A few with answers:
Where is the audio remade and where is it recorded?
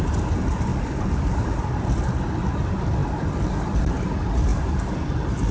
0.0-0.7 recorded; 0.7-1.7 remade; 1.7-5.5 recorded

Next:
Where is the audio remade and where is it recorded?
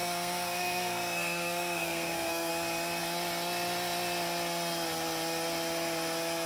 0.0-2.5 remade; 2.5-6.5 recorded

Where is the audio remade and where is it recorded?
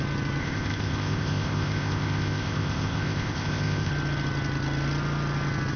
0.0-0.4 recorded; 0.4-3.9 remade; 3.9-5.8 recorded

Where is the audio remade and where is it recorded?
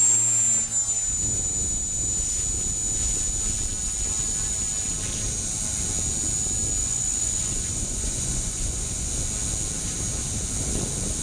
0.0-6.8 recorded; 6.8-9.1 remade; 9.1-11.2 recorded